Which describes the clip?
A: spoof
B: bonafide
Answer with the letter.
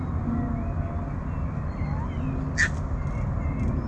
B